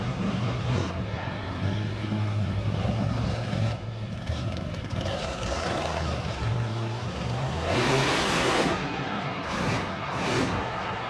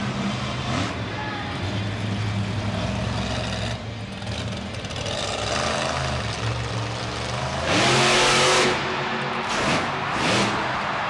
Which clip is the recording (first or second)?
second